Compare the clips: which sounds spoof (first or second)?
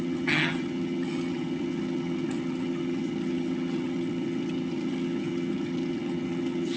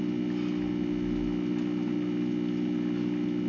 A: first